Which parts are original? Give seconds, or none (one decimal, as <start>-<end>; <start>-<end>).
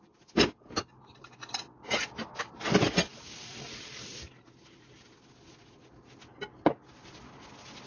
0.0-7.9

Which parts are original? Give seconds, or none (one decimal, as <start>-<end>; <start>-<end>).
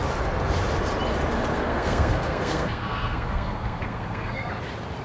0.0-1.5; 4.5-5.0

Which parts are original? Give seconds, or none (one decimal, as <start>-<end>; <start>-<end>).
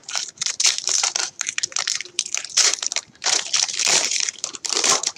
none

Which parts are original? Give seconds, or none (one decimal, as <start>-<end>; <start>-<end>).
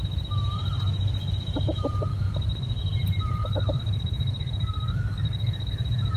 0.0-2.1; 2.8-3.4; 5.7-6.2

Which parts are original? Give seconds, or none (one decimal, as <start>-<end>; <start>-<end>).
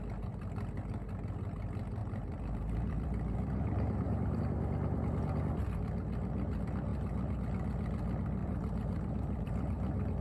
0.0-2.0; 4.4-6.9; 7.4-8.4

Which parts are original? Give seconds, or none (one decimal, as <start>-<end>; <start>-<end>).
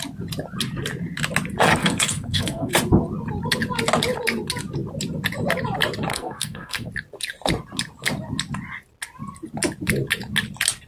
0.0-1.8; 2.7-6.1; 6.9-10.9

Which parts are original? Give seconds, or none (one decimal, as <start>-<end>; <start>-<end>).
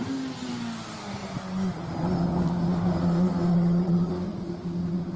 0.0-3.5; 4.1-5.2